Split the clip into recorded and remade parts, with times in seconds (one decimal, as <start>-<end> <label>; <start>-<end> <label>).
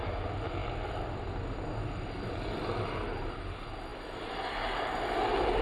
0.0-5.6 recorded